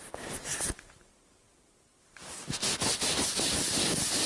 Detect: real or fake real